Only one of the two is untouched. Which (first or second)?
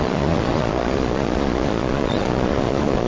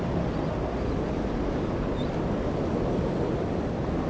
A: second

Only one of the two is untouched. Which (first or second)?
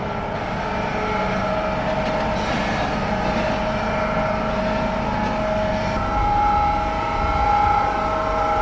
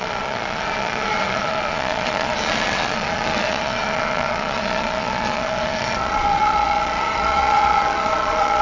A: first